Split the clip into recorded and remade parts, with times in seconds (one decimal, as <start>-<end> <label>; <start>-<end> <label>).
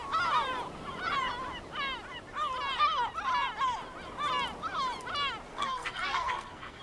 0.0-5.5 recorded; 5.5-6.8 remade